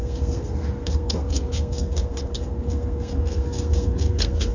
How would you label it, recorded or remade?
remade